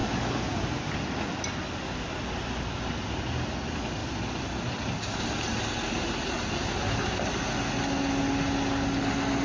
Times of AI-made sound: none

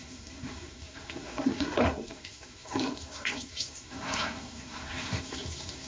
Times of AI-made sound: 0.0-5.9 (codec, SNAC)

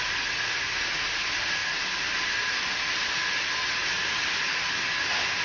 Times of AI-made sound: none

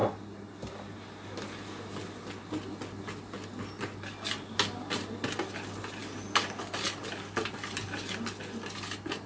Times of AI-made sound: none

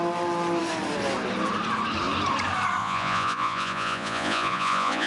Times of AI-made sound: 2.8-5.1 (vocoder, Vocos)

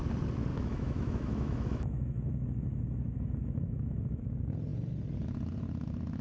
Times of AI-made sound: 0.5-4.2 (autoencoder, DAC-VAE)